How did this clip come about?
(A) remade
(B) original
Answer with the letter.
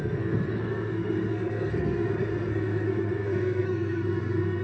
A